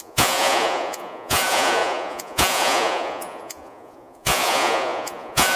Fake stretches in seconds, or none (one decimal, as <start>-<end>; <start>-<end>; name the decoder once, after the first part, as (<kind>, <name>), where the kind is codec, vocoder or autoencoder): 0.0-5.6 (vocoder, Vocos)